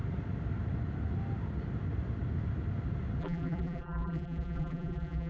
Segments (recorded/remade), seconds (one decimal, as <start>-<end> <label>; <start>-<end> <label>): 0.0-3.2 recorded; 3.2-5.3 remade